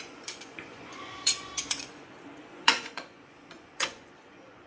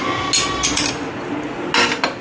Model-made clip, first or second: first